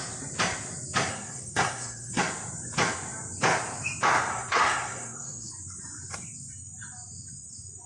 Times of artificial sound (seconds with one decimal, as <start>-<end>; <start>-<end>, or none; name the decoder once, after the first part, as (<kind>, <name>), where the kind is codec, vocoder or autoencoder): 1.1-2.2 (codec, SNAC); 4.3-5.5